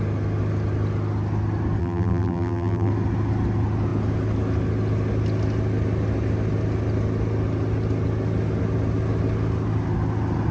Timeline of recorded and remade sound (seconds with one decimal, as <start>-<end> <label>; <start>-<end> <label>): 0.0-1.8 recorded; 1.8-2.9 remade; 2.9-10.5 recorded